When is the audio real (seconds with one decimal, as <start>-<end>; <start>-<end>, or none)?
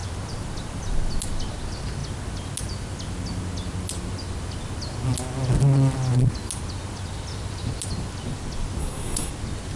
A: 0.0-8.8; 9.3-9.8